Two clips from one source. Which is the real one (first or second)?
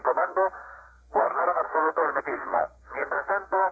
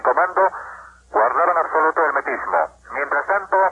second